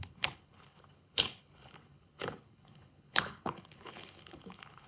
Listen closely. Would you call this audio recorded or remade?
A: remade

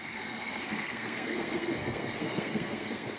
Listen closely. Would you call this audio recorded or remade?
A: remade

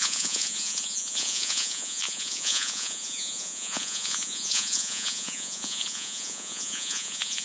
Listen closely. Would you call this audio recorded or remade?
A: remade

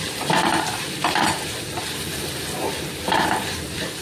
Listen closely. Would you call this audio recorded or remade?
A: remade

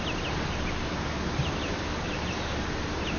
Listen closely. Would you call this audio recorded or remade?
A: recorded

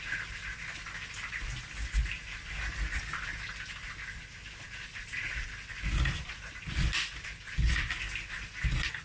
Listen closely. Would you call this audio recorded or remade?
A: recorded